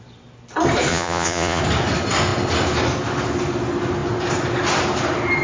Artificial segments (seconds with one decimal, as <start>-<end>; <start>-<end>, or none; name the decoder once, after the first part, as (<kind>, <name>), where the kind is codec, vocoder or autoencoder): 0.9-1.6 (vocoder, Vocos)